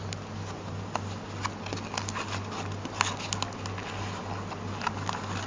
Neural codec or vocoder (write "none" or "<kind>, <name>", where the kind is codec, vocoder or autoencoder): none